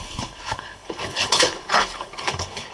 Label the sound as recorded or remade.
remade